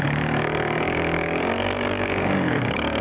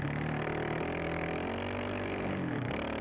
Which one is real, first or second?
second